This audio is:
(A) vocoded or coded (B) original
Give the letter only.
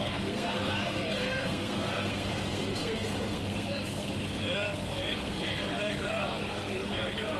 A